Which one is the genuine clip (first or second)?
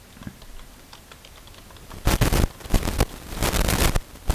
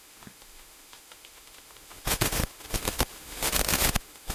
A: first